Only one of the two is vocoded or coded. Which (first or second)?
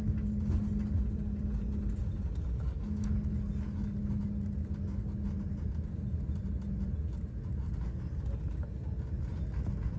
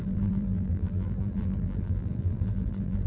second